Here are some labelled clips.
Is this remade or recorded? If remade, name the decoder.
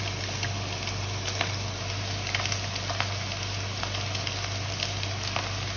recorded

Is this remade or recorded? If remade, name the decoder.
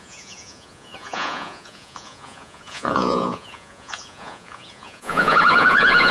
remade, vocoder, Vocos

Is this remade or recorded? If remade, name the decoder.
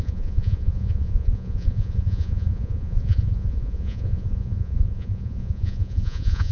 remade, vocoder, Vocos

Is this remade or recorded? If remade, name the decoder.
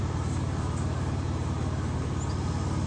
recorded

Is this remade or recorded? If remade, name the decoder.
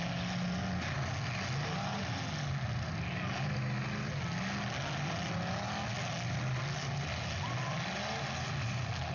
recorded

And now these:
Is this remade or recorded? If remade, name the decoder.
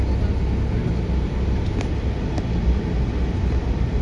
recorded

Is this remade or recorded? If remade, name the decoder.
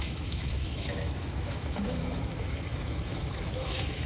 remade, autoencoder, DAC-VAE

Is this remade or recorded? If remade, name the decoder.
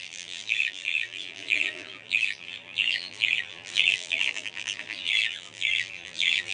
remade, vocoder, BigVGAN v2